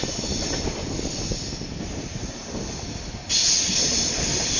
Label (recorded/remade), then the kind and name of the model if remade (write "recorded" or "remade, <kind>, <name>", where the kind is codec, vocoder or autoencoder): recorded